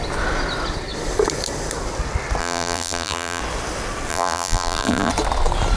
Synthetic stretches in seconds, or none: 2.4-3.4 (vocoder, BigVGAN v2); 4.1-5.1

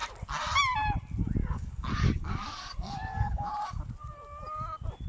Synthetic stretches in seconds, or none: 1.4-3.5 (codec, DAC)